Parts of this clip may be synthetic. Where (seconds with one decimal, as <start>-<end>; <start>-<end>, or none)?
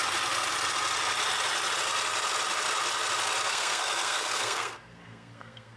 3.5-5.8